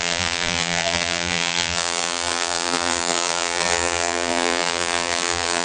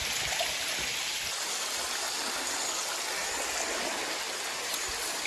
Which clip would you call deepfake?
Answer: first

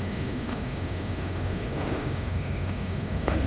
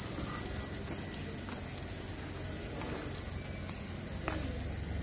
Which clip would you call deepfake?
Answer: first